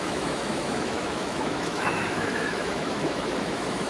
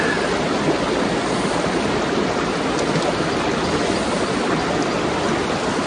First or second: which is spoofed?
first